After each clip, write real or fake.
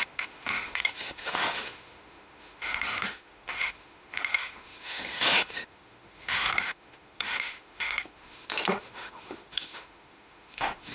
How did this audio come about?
fake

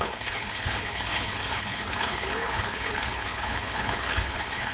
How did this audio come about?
fake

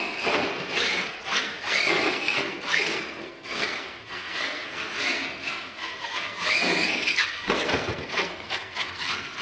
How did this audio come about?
fake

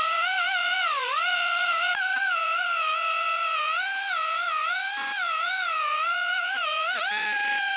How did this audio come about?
fake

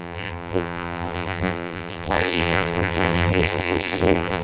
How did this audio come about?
fake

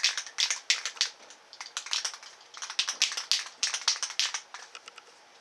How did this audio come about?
real